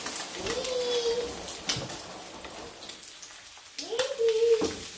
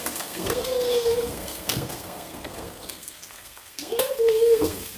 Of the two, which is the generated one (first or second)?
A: second